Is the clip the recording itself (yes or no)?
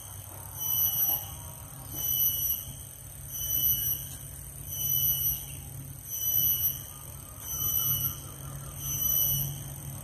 yes